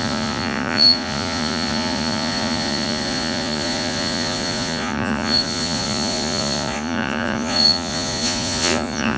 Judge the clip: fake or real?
fake